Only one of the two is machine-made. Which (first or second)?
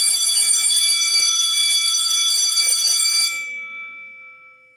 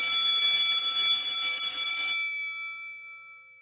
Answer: first